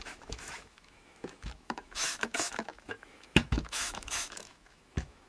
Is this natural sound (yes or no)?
no